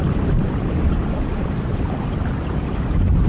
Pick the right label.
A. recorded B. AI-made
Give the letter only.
B